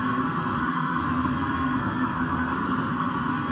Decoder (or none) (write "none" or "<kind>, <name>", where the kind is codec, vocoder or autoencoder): codec, SNAC